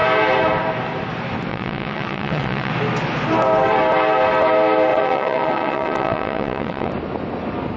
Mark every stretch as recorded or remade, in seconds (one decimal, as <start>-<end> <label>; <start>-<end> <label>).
0.0-1.5 recorded; 1.5-2.7 remade; 2.7-4.9 recorded; 4.9-6.9 remade; 6.9-7.8 recorded